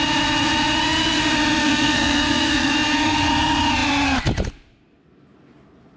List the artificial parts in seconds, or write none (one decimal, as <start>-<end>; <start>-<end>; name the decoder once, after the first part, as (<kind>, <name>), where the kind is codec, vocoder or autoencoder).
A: 1.6-2.7 (codec, SNAC)